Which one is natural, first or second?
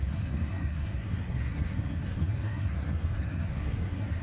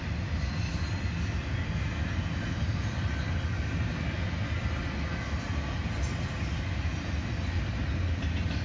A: second